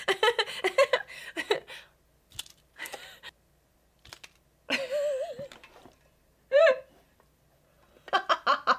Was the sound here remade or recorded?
recorded